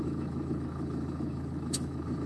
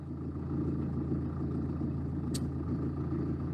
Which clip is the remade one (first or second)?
first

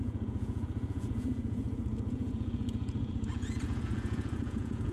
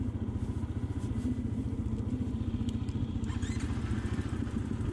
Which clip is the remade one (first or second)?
first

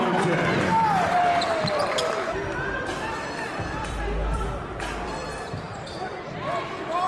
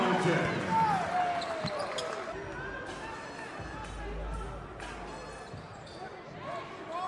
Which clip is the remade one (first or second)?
first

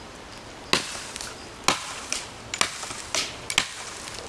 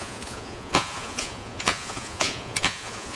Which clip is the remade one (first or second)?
second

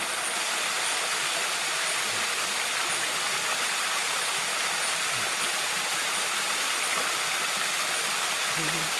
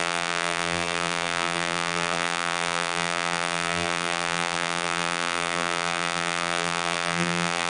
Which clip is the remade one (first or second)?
second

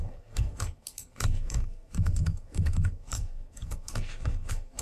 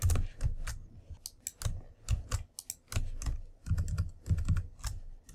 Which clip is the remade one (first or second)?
first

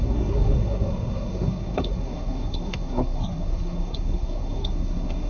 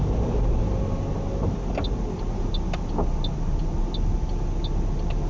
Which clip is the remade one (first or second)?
first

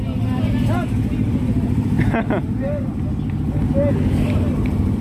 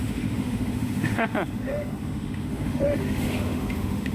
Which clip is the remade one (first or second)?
second